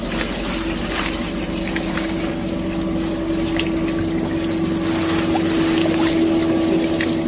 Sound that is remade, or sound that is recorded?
recorded